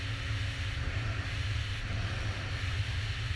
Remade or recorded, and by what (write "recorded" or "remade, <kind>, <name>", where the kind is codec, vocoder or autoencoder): recorded